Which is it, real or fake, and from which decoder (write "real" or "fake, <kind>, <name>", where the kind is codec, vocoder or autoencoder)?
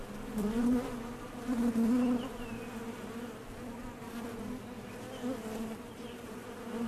real